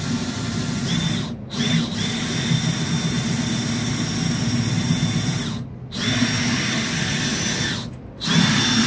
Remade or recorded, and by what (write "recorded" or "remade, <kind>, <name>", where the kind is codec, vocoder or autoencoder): recorded